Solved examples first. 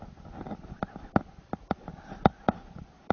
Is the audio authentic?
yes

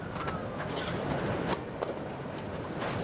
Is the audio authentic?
no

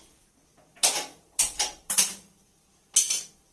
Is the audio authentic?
no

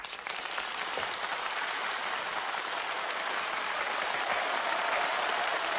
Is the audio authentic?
no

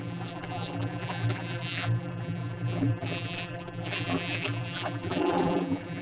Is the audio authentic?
no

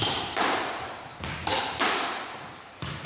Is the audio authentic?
no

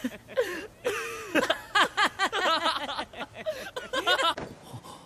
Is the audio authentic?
yes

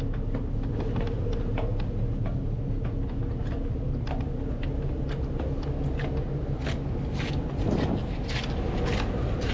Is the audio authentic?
yes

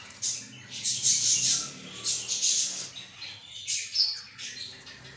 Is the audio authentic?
yes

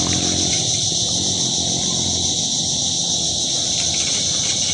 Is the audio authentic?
no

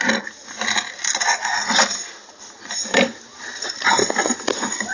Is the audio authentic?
yes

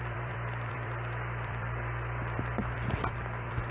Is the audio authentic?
no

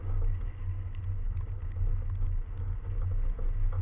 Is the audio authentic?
yes